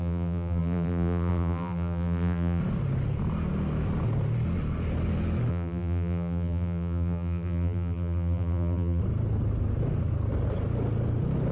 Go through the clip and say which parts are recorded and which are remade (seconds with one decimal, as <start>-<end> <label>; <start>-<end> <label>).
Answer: 0.0-2.6 remade; 2.6-5.5 recorded; 5.5-9.0 remade; 9.0-11.5 recorded